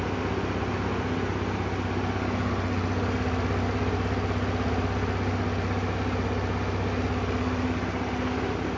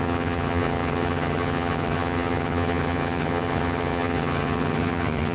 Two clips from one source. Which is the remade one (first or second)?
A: second